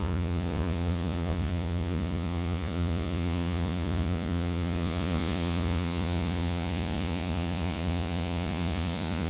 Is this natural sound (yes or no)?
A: no